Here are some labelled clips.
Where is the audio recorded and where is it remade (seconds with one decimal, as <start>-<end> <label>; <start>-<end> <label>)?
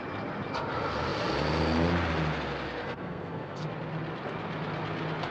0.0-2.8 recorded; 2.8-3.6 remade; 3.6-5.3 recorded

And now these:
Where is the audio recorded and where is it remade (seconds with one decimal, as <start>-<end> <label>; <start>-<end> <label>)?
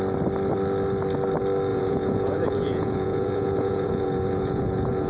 0.0-1.7 recorded; 1.7-5.1 remade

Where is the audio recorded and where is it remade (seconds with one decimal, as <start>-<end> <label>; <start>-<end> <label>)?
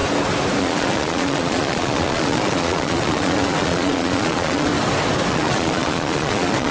0.0-0.6 recorded; 0.6-4.7 remade; 4.7-5.3 recorded; 5.3-6.7 remade